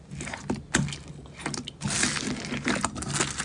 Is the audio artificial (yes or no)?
no